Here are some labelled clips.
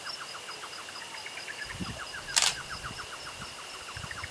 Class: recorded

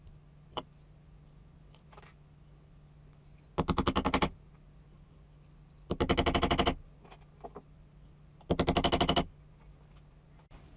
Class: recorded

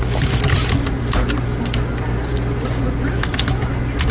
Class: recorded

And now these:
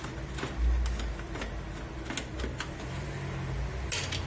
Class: recorded